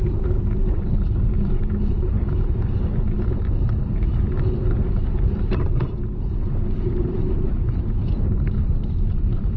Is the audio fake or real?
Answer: fake